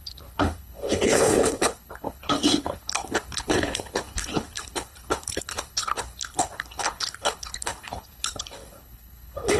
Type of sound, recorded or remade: remade